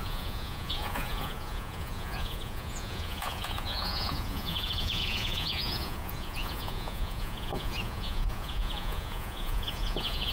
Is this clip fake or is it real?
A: fake